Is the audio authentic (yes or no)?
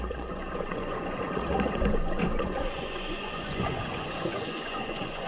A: no